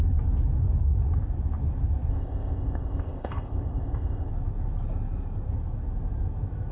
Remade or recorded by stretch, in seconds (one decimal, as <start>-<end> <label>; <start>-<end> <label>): 0.0-2.1 recorded; 2.1-4.3 remade; 4.3-6.7 recorded